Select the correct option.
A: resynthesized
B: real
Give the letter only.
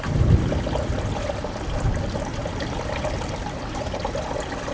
B